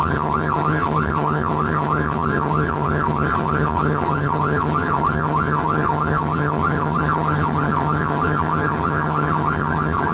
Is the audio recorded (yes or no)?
no